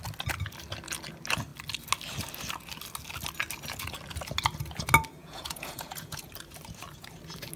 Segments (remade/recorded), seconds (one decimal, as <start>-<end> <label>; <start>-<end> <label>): 0.0-5.2 recorded; 5.2-6.3 remade; 6.3-7.6 recorded